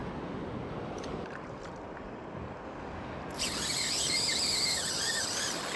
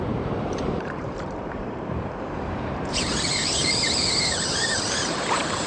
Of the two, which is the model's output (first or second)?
second